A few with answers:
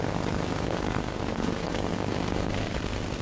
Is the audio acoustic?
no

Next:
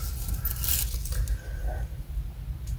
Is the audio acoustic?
yes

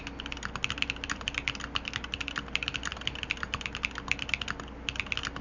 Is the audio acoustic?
yes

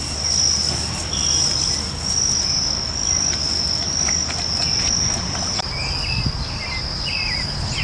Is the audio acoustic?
yes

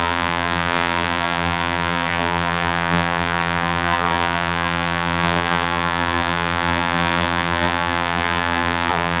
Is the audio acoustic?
no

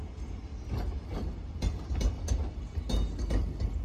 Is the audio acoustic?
yes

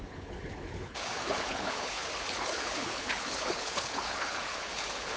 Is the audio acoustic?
no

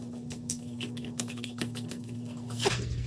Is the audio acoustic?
no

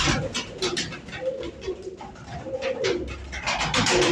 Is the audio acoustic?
yes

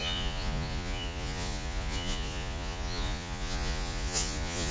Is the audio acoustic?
no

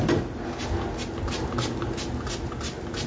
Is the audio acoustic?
yes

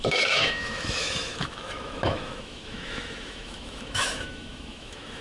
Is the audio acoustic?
no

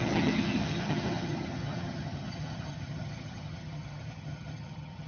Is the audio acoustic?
no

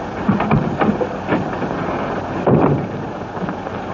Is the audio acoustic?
yes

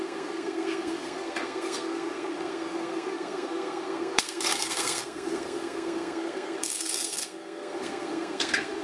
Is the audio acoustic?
no